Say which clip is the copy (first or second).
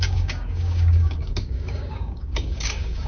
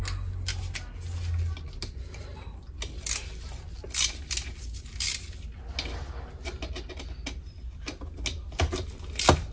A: first